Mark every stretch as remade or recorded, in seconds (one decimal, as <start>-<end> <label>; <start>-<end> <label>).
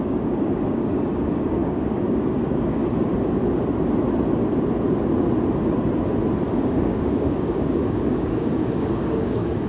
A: 0.0-2.8 remade; 2.8-6.5 recorded; 6.5-9.7 remade